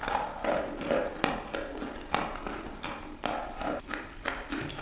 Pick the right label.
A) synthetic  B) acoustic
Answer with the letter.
A